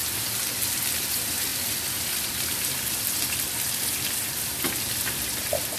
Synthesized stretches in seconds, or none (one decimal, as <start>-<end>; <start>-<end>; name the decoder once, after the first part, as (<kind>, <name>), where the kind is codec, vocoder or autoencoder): 0.9-5.8 (vocoder, BigVGAN v2)